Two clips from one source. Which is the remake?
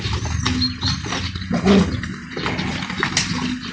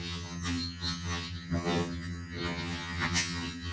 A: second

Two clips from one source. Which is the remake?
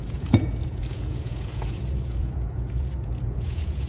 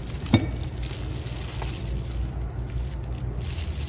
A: first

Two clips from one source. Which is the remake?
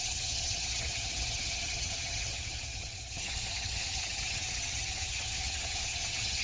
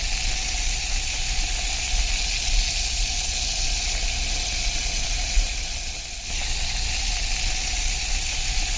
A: first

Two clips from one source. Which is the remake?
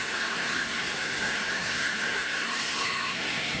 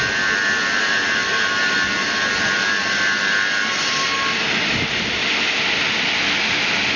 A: first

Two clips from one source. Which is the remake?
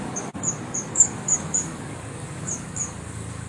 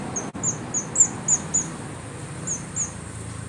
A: first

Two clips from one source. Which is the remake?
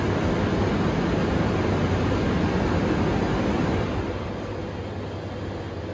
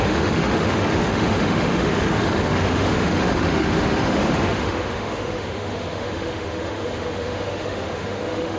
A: second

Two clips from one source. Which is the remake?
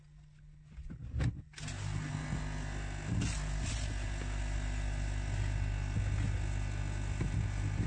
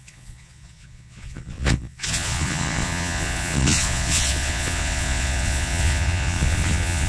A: second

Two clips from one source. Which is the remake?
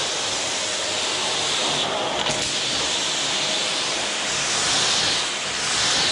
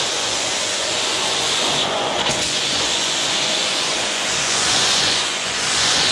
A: second